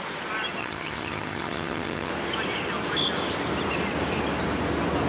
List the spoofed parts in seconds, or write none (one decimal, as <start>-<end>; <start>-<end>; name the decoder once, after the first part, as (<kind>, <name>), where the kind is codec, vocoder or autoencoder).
0.6-2.1 (vocoder, HiFi-GAN)